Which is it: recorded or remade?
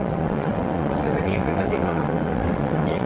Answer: remade